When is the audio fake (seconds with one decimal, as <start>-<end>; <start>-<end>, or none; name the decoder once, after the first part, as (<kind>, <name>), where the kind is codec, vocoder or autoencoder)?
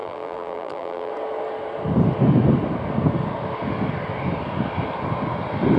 0.0-1.1 (vocoder, BigVGAN v2)